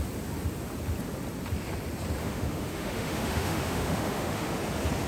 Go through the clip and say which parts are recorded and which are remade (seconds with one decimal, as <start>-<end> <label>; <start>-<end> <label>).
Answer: 0.0-2.2 recorded; 2.2-4.6 remade; 4.6-5.1 recorded